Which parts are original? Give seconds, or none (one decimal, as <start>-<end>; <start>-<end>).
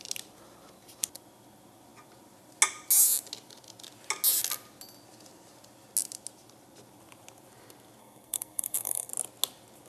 0.0-8.0; 9.1-9.9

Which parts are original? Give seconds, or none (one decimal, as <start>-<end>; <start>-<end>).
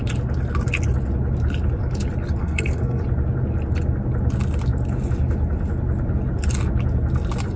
0.0-2.4; 3.0-7.6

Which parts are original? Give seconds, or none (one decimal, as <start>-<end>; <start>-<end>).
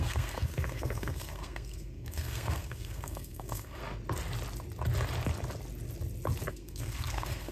3.8-6.5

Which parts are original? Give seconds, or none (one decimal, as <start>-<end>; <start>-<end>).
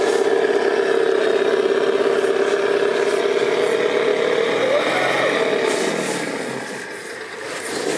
0.0-8.0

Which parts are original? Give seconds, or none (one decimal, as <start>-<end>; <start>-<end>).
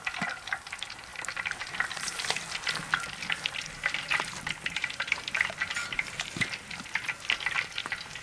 0.0-8.2